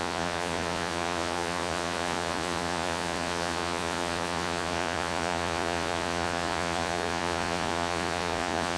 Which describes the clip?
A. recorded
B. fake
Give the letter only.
B